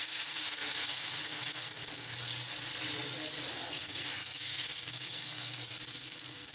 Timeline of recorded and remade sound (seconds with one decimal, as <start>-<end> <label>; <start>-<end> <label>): 0.0-2.1 remade; 2.1-3.7 recorded; 3.7-6.5 remade